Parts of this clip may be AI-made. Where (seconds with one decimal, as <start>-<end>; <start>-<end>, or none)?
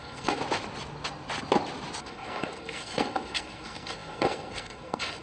0.0-0.4; 2.0-5.2